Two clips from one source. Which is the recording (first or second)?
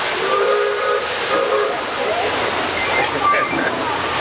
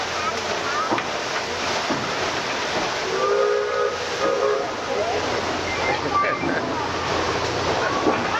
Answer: second